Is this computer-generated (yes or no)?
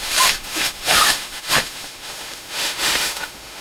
yes